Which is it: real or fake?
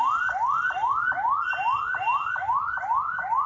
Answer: real